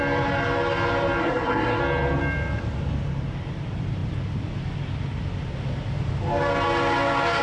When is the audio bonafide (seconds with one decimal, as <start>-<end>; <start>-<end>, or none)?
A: 0.0-1.2; 1.8-7.4